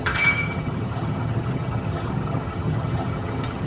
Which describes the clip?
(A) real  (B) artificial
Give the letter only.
B